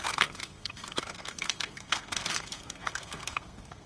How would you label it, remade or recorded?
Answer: remade